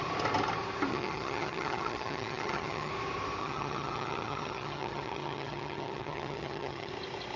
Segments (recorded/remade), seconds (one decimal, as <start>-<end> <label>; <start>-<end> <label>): 0.0-0.9 recorded; 0.9-2.9 remade; 2.9-3.4 recorded; 3.4-6.9 remade; 6.9-7.4 recorded